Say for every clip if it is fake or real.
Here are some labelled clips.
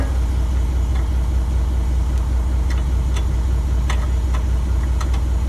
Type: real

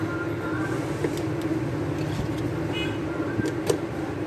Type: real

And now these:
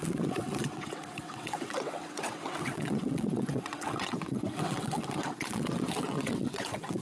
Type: fake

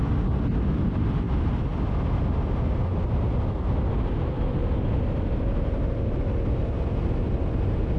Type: real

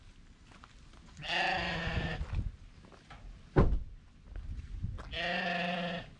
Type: real